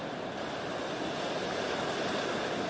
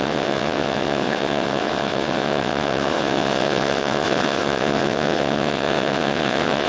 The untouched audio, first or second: first